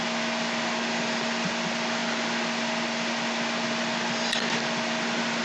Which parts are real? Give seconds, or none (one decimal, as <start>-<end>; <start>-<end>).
0.0-5.4

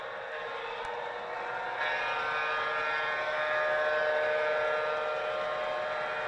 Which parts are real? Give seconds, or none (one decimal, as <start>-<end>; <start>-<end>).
0.0-6.3

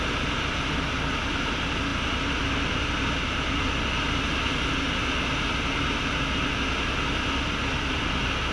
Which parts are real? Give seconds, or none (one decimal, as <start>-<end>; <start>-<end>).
0.0-8.5

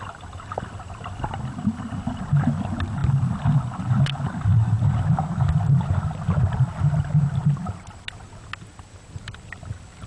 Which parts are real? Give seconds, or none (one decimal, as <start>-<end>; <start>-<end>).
0.0-10.1